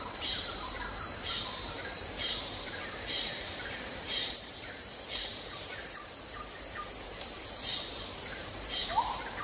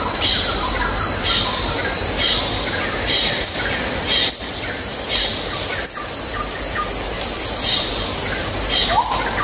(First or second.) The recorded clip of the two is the second